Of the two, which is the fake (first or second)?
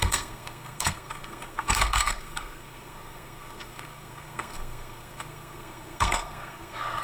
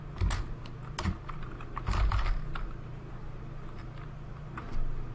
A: first